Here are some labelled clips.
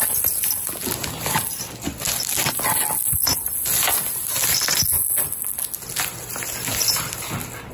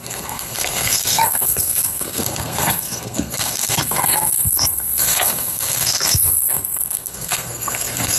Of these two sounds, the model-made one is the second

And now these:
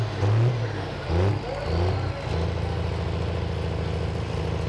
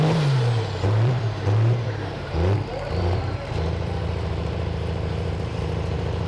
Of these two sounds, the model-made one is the second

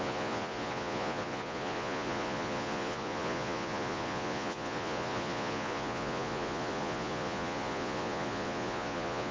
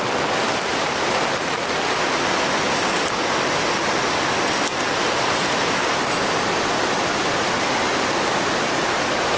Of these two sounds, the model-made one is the first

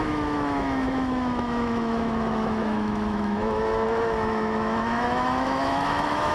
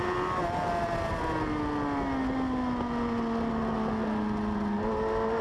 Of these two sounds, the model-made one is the first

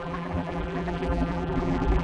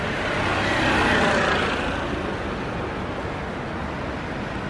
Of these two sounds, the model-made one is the first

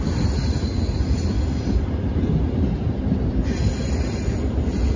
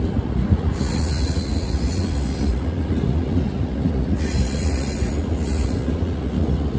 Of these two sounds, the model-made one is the second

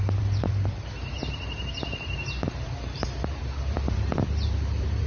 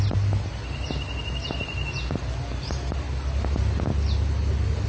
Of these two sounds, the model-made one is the first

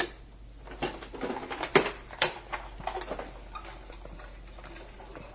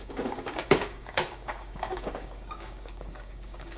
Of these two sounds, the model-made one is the second